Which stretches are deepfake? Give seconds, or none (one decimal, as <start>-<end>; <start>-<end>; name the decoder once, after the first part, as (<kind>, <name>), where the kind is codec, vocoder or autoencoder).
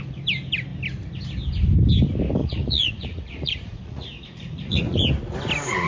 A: 2.4-5.0 (vocoder, Vocos)